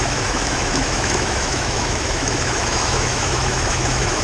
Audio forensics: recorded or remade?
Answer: remade